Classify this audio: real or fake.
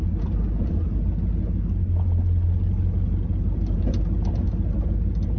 real